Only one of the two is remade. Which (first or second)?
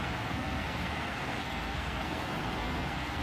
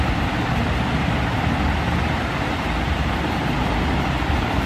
first